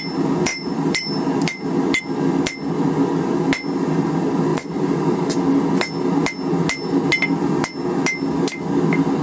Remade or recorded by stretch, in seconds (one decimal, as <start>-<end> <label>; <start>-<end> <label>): 0.0-0.5 recorded; 0.5-2.0 remade; 2.0-4.5 recorded; 4.5-5.3 remade; 5.3-9.2 recorded